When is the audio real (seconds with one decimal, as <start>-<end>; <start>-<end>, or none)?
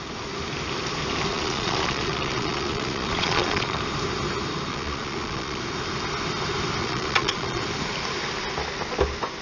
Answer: 0.0-1.3; 3.8-4.7; 5.6-6.8; 7.6-9.4